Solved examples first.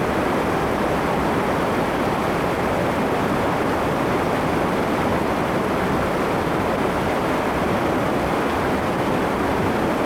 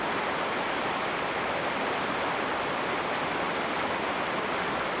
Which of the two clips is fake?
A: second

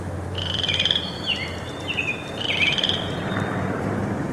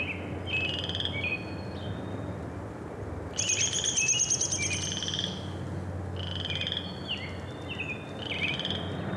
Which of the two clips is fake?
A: first